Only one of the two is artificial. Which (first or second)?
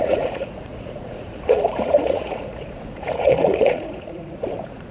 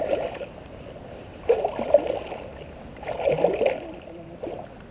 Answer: first